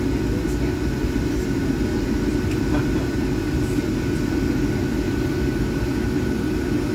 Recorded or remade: recorded